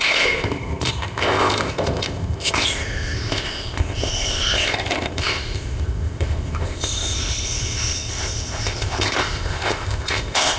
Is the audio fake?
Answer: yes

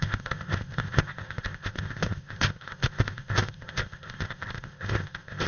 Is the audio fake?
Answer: yes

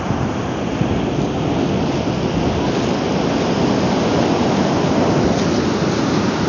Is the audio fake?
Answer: no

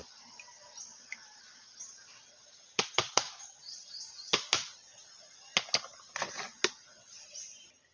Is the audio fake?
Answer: no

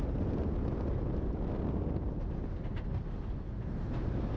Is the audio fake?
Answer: no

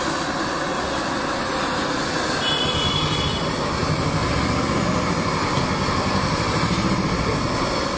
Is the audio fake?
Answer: no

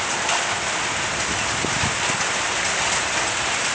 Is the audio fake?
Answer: no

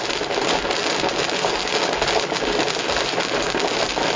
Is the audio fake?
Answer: no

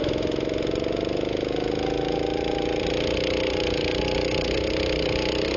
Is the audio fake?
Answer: no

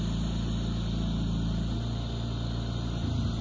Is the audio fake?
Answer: no